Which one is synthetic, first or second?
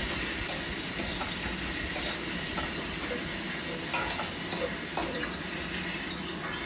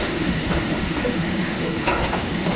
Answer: second